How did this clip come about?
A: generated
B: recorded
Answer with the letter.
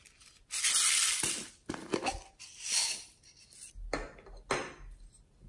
B